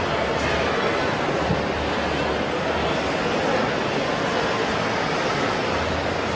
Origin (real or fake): real